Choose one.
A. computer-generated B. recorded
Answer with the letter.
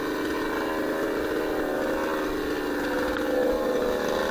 B